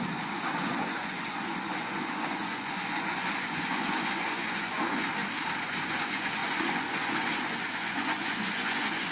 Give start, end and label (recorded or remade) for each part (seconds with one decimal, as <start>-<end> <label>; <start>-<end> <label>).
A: 0.0-5.1 remade; 5.1-5.6 recorded; 5.6-9.1 remade